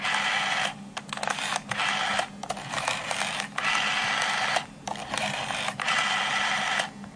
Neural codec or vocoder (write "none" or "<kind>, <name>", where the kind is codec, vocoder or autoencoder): none